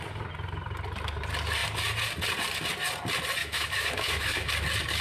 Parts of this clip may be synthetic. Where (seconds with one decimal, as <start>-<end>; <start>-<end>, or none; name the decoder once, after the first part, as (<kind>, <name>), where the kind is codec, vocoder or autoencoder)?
3.4-4.5 (autoencoder, DAC-VAE)